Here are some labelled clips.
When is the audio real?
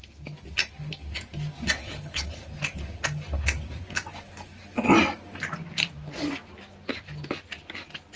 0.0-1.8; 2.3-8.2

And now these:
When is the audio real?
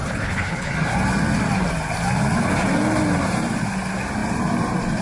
0.7-5.0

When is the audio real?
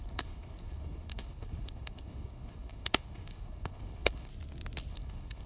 4.3-4.9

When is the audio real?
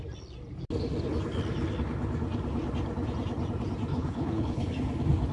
0.0-3.9; 4.7-5.3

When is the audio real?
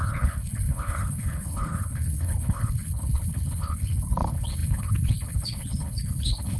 none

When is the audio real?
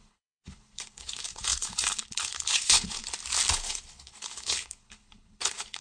3.0-3.5